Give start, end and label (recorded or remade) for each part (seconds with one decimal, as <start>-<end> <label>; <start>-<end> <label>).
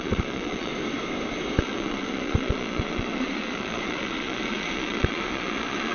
0.0-0.7 remade; 0.7-1.6 recorded; 1.6-5.9 remade